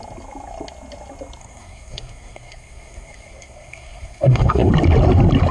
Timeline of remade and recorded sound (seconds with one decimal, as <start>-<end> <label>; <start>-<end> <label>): 0.0-1.4 recorded; 1.4-4.7 remade; 4.7-5.5 recorded